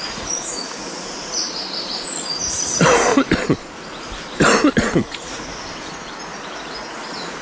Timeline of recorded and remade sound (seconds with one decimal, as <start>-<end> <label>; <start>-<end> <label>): 0.0-3.1 remade; 3.1-4.7 recorded; 4.7-5.5 remade; 5.5-6.5 recorded; 6.5-7.4 remade